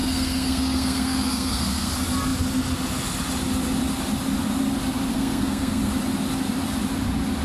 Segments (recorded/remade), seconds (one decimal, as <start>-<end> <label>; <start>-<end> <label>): 0.0-1.9 remade; 1.9-5.1 recorded; 5.1-5.9 remade; 5.9-7.4 recorded